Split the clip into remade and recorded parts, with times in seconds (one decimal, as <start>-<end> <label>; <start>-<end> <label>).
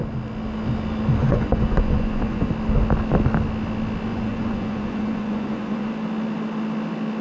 0.0-1.2 recorded; 1.2-2.5 remade; 2.5-4.1 recorded; 4.1-5.9 remade; 5.9-7.2 recorded